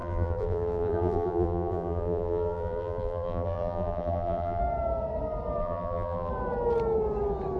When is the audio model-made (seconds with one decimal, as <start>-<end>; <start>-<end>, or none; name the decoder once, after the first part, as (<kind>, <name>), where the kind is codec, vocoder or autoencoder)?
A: 0.0-4.6 (vocoder, BigVGAN v2); 5.6-6.3